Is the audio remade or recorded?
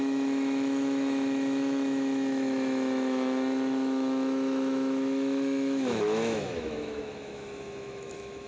remade